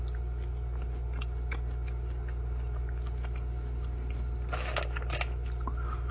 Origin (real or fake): real